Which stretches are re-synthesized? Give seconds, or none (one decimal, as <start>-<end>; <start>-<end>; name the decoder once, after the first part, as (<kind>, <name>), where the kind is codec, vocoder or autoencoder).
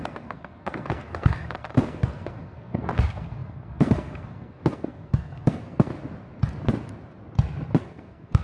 0.0-5.9 (codec, SNAC); 7.8-8.4